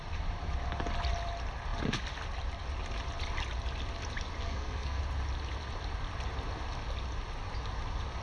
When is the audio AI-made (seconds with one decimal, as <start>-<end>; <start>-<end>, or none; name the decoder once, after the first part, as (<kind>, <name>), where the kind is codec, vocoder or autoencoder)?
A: 4.4-5.0 (codec, SNAC)